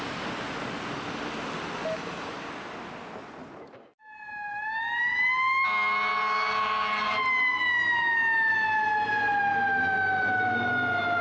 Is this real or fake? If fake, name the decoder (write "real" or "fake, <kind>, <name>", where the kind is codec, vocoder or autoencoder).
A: real